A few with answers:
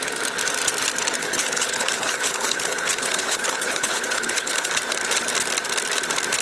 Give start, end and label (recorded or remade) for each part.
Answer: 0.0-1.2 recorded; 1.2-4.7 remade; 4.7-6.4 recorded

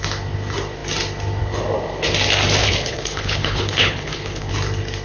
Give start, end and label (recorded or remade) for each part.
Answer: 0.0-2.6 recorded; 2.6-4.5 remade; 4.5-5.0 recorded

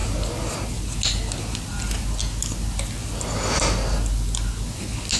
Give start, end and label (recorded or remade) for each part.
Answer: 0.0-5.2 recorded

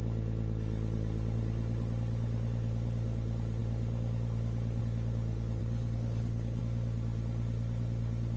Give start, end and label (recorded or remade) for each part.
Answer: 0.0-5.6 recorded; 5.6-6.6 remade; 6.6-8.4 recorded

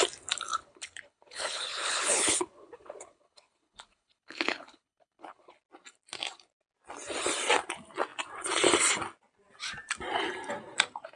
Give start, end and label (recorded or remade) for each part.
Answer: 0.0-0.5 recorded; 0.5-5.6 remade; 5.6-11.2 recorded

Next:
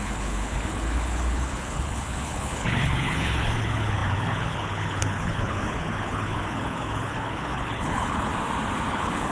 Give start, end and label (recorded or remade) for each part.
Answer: 0.0-8.3 remade; 8.3-8.9 recorded; 8.9-9.3 remade